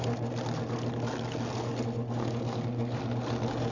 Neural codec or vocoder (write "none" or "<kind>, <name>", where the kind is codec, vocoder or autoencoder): none